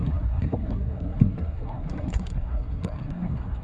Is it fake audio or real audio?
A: fake